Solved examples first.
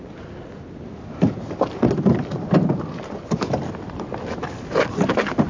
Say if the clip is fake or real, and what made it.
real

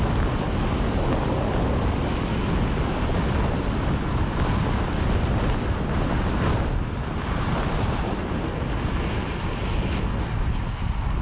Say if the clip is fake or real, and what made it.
real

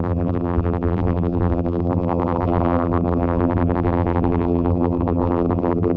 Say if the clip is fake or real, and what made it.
fake, vocoder, BigVGAN v2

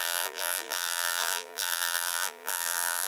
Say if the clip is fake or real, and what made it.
fake, vocoder, BigVGAN v2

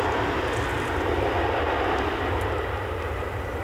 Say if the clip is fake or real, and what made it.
real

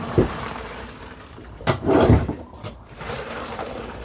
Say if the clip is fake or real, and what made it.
fake, vocoder, BigVGAN v2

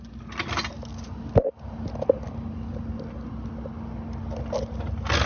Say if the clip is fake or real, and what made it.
real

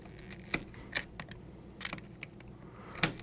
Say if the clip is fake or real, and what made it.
real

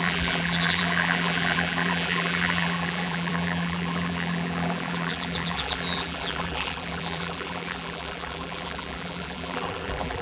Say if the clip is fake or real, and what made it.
fake, vocoder, BigVGAN v2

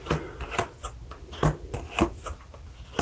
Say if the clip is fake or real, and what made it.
real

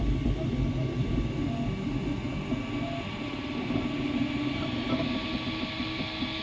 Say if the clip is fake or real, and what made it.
real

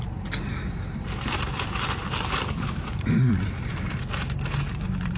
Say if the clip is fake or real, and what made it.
fake, vocoder, BigVGAN v2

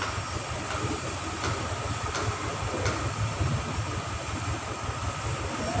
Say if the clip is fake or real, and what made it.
real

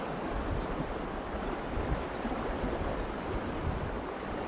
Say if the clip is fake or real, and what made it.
fake, vocoder, BigVGAN v2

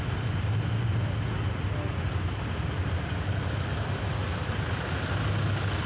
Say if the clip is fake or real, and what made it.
real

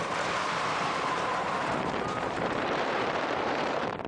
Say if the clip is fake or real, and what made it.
fake, vocoder, BigVGAN v2